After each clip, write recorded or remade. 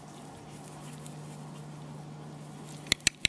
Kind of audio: recorded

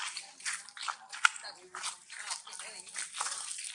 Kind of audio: recorded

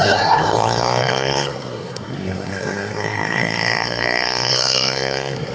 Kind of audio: remade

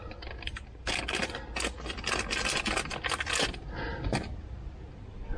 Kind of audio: recorded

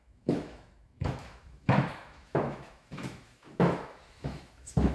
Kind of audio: remade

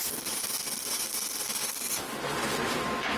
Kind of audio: recorded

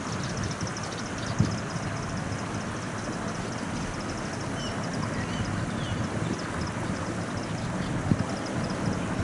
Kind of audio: recorded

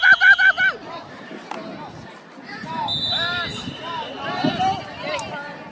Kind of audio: recorded